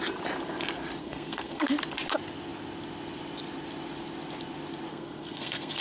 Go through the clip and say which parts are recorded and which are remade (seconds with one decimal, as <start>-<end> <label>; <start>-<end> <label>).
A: 0.0-1.0 recorded; 1.0-1.7 remade; 1.7-4.9 recorded; 4.9-5.8 remade